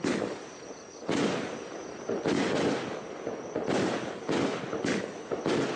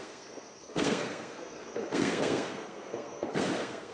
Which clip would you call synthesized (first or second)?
second